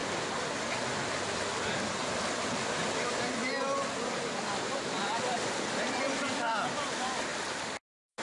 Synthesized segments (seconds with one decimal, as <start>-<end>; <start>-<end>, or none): none